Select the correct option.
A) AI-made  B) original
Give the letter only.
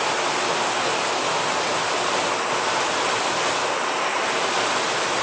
B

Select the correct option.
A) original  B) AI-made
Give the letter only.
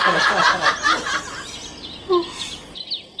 A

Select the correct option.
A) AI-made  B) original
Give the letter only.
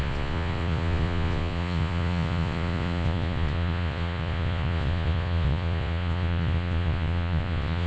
A